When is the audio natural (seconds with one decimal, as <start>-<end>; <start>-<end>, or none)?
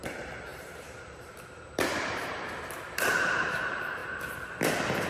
4.0-5.1